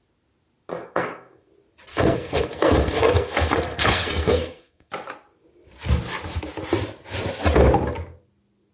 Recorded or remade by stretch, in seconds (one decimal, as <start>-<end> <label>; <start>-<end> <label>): 0.0-0.7 recorded; 0.7-1.5 remade; 1.5-1.9 recorded; 1.9-4.9 remade; 4.9-8.7 recorded